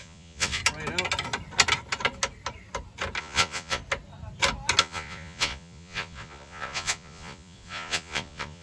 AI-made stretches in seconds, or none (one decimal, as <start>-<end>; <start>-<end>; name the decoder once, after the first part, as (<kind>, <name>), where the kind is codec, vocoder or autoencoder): 0.0-0.6 (vocoder, Vocos); 3.2-3.8; 4.8-8.6